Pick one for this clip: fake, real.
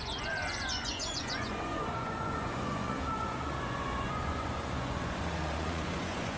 fake